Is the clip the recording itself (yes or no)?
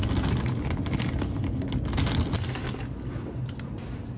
yes